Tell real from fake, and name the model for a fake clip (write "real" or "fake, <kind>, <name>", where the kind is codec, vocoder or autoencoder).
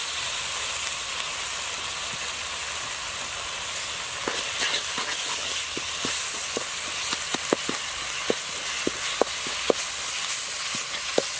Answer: real